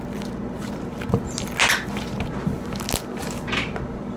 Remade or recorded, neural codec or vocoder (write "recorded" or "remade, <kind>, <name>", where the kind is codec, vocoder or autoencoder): recorded